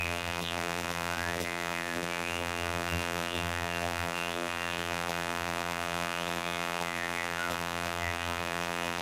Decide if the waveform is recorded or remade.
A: remade